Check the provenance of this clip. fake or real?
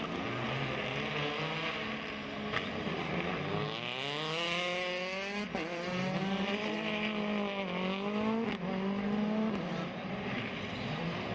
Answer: real